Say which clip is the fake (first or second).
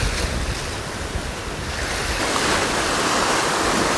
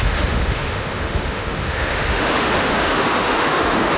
second